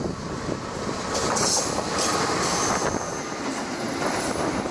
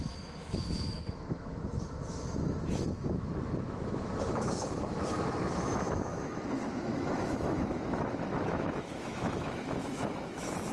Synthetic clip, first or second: second